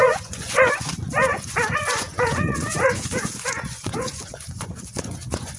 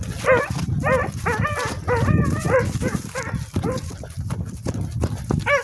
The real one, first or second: second